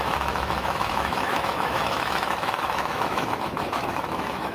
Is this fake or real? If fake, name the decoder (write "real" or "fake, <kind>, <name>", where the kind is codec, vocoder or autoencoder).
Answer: fake, autoencoder, DAC-VAE